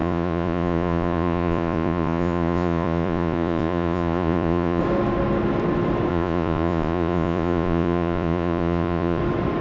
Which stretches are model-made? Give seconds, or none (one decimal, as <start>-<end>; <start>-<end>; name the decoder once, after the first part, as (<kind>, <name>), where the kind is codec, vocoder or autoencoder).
0.0-4.8 (vocoder, Vocos); 6.1-9.2